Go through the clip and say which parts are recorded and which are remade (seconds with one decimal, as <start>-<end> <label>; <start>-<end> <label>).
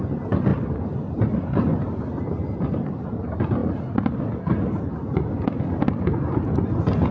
0.0-7.1 recorded